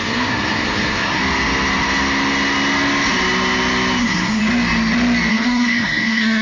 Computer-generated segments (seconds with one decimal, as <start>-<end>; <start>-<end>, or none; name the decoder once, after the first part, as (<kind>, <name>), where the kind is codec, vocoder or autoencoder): 0.0-1.2 (codec, SNAC); 4.0-4.4; 5.3-6.4